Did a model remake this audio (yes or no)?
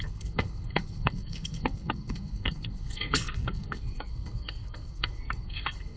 yes